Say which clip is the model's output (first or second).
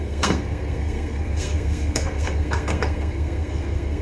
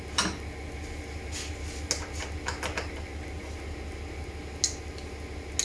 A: first